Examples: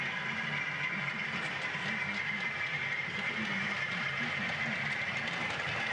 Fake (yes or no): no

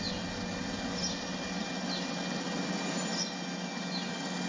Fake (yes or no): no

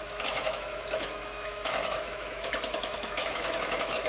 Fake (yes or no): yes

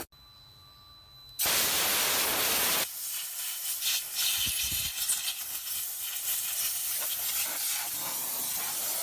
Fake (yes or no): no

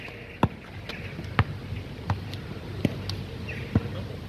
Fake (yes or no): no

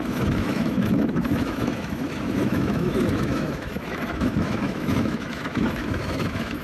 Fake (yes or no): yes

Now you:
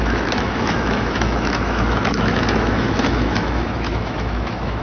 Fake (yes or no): yes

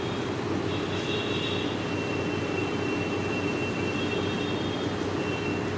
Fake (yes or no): no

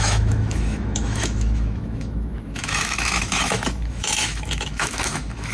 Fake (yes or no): yes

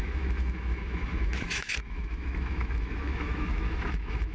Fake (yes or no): yes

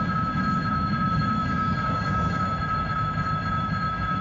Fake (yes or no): yes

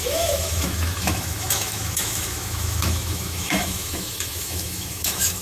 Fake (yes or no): yes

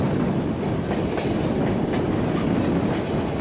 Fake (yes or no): no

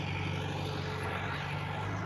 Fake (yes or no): no